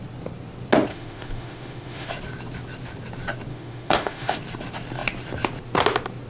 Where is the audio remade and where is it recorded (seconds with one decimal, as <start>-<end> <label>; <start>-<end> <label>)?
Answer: 0.0-0.9 recorded; 0.9-2.1 remade; 2.1-3.5 recorded; 3.5-4.4 remade; 4.4-6.3 recorded